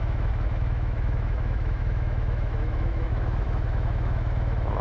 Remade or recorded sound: remade